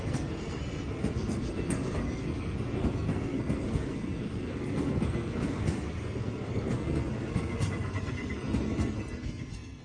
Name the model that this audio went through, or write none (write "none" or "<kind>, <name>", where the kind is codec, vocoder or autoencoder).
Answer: codec, SNAC